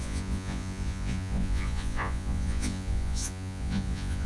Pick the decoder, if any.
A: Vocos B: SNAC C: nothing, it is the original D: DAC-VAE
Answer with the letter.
A